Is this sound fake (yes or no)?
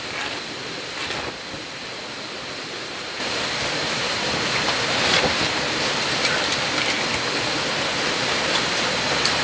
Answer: no